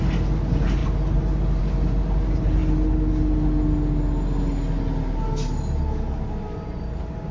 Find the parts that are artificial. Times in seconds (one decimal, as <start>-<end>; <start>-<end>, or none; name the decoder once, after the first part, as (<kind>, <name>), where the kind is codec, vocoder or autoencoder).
none